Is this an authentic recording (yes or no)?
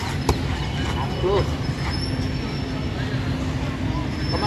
yes